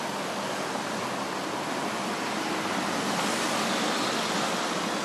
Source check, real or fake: real